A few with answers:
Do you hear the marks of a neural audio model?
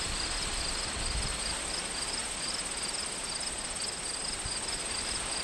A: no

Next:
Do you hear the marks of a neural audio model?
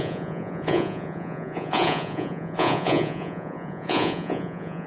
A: yes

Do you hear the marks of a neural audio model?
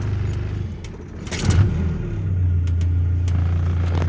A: no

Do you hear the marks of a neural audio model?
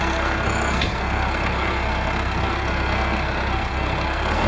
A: yes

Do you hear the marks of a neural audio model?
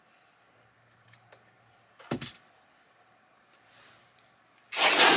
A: no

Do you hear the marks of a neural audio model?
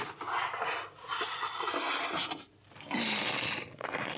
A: no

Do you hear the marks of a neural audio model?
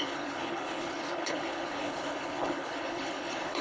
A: yes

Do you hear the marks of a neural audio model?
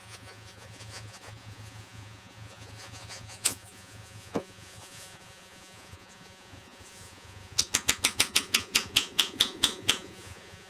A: yes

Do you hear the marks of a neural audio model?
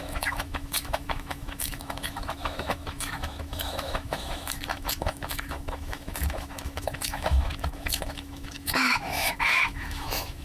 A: yes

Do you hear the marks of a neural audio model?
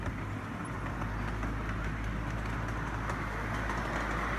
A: no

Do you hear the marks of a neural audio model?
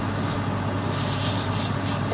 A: no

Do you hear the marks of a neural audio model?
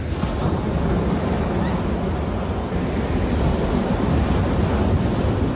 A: no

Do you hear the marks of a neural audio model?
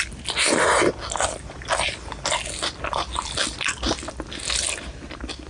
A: no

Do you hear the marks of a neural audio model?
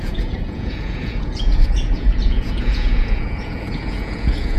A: yes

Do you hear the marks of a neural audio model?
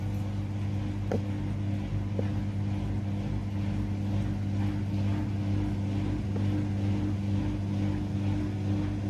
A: no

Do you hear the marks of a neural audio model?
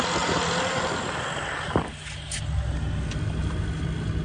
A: no